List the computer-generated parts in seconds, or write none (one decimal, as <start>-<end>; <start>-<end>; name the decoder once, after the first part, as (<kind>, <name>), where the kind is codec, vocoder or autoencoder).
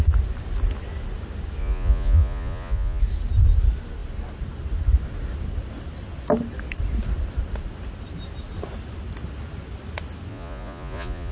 1.6-3.0 (vocoder, Vocos); 10.3-11.3